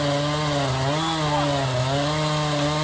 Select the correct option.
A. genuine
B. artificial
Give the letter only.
A